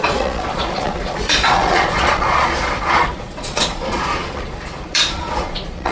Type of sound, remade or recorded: remade